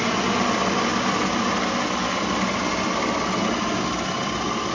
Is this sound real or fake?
real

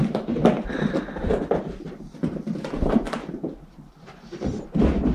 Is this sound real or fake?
fake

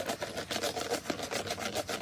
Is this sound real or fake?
real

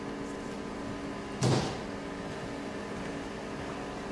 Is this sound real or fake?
real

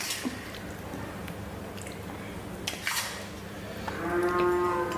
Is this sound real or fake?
real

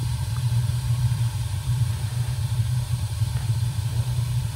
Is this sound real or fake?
fake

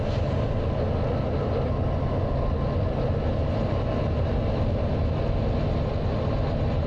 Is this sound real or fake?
real